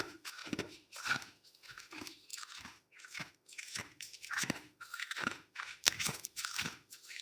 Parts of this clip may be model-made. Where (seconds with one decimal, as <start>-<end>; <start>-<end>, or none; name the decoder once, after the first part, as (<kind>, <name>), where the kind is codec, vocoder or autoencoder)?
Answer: 0.0-7.2 (autoencoder, DAC-VAE)